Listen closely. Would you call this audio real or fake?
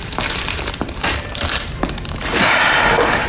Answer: fake